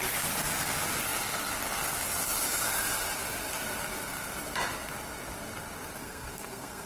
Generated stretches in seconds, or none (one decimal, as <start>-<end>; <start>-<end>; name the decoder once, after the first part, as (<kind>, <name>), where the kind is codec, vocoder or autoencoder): 6.0-6.9 (codec, SNAC)